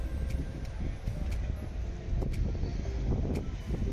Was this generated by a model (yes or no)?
no